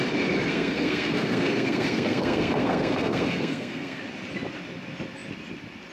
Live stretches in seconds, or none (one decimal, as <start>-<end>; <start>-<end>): 0.0-0.5; 4.0-5.9

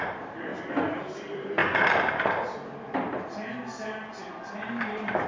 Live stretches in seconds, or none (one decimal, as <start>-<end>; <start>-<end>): 0.5-1.0; 1.6-4.8